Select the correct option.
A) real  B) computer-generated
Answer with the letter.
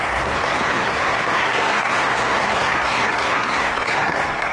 B